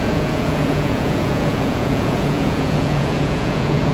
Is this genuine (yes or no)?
no